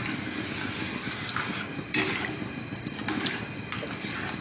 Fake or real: real